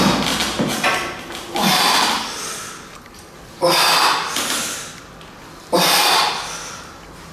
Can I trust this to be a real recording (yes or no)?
yes